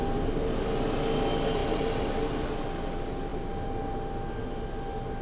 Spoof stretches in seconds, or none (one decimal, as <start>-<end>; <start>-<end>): none